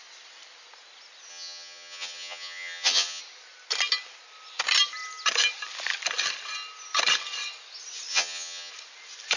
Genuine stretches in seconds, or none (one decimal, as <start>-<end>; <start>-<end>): 0.0-1.3; 3.2-8.1; 8.7-9.4